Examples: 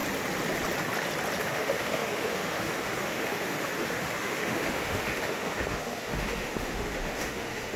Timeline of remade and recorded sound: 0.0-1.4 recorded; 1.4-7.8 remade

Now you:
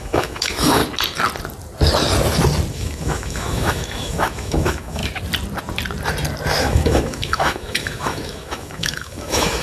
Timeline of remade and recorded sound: 0.0-0.8 remade; 0.8-2.7 recorded; 2.7-5.0 remade; 5.0-6.6 recorded; 6.6-9.6 remade